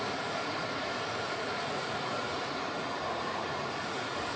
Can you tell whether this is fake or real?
fake